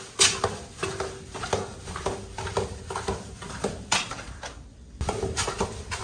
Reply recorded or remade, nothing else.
recorded